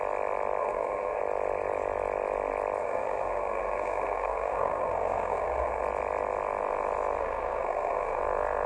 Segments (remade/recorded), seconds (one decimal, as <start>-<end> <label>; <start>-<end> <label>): 0.0-0.6 recorded; 0.6-1.2 remade; 1.2-2.8 recorded; 2.8-5.8 remade; 5.8-7.2 recorded; 7.2-8.2 remade; 8.2-8.7 recorded